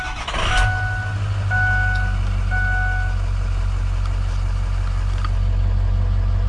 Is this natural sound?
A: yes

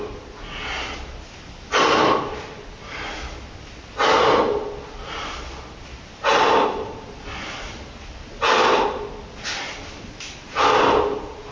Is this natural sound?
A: yes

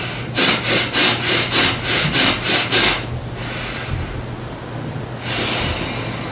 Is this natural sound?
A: yes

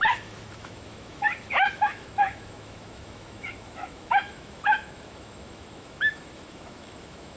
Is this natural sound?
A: no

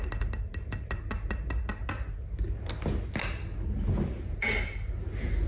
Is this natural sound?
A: yes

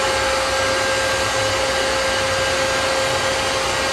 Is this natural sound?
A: yes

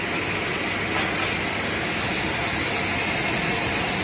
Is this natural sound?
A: yes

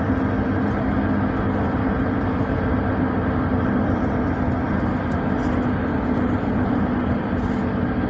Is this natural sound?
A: yes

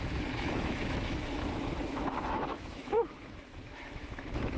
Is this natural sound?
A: no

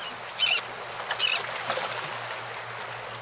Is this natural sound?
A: yes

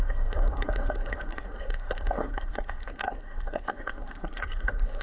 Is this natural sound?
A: no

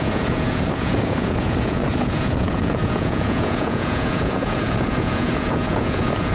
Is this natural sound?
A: no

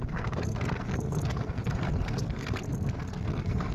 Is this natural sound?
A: no